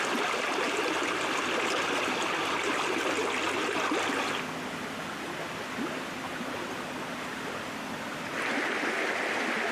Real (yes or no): yes